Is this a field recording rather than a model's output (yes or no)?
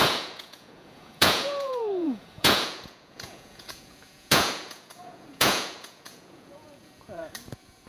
no